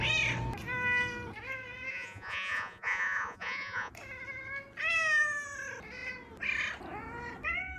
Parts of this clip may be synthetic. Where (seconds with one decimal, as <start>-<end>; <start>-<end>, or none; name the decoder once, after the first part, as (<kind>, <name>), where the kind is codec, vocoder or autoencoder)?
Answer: 1.9-3.9 (vocoder, Vocos)